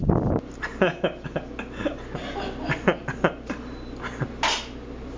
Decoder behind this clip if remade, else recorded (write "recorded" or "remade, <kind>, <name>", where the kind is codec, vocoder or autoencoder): recorded